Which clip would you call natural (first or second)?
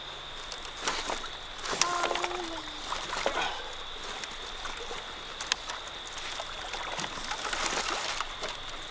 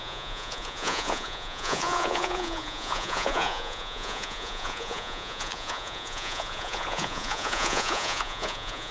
first